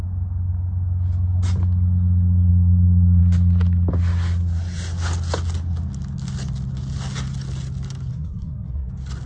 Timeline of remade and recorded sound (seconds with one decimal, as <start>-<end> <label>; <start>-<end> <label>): 0.0-8.1 recorded; 8.1-8.9 remade; 8.9-9.3 recorded